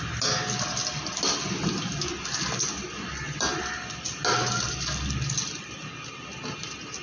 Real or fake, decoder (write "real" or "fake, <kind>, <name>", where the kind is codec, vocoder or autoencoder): real